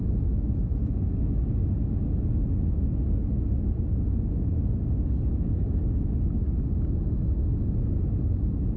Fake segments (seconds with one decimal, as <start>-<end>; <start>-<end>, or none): none